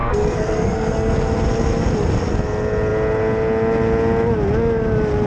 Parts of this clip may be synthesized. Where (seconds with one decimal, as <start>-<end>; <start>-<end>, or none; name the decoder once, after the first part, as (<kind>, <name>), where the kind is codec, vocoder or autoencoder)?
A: 0.0-1.1 (codec, SNAC)